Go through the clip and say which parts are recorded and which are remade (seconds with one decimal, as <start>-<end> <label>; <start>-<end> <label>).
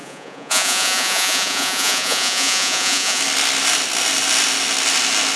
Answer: 0.0-3.2 remade; 3.2-5.4 recorded